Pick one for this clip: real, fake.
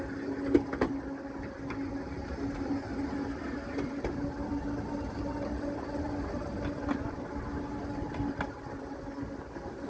real